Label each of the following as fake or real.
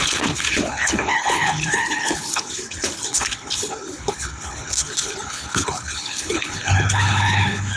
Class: fake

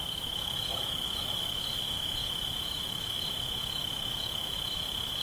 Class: fake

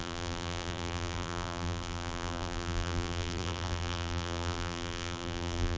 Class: fake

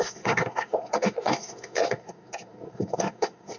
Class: fake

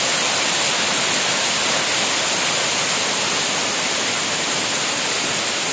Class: real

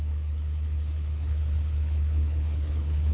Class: fake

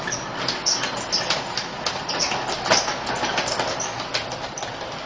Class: real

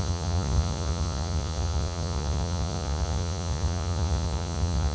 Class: fake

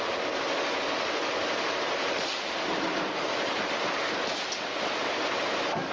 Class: real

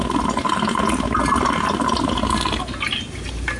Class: real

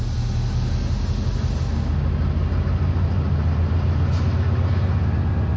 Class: real